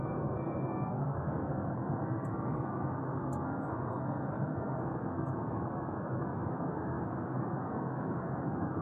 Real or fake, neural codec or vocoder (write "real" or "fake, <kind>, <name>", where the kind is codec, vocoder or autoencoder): fake, codec, SNAC